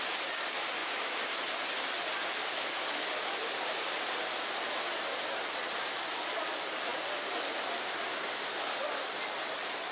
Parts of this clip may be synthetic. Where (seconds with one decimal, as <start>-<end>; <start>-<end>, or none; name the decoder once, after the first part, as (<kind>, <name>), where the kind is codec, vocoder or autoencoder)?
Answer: 0.8-1.5 (vocoder, BigVGAN v2); 3.4-4.2